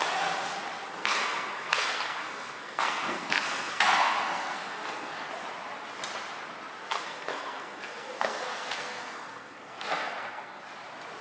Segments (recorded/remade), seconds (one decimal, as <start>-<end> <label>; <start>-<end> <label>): 0.0-1.0 recorded; 1.0-5.3 remade; 5.3-6.8 recorded; 6.8-10.6 remade; 10.6-11.2 recorded